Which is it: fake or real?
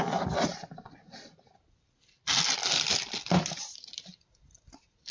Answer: real